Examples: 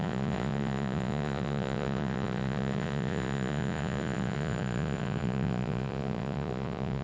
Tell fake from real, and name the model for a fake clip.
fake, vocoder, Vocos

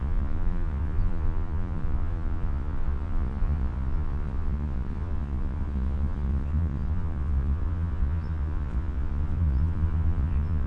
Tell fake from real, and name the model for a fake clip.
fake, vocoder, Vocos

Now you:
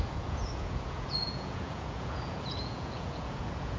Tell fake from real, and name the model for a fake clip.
fake, vocoder, Vocos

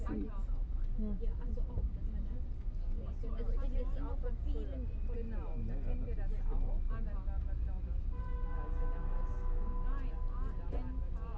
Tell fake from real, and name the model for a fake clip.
real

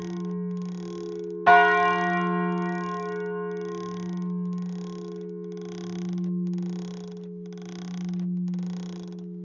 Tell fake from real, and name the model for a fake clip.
real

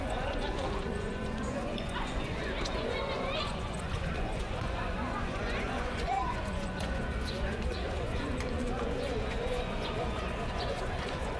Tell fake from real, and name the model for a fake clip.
fake, vocoder, Vocos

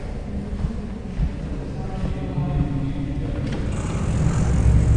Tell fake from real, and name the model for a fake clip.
real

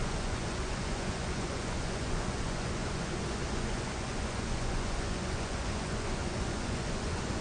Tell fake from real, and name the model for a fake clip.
fake, vocoder, Vocos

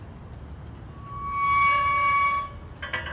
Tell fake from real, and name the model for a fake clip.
real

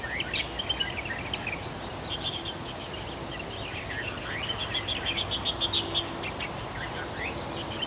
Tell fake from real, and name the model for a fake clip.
real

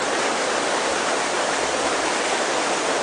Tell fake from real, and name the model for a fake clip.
real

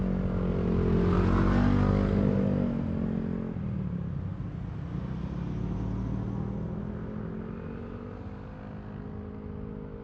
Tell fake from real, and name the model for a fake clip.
real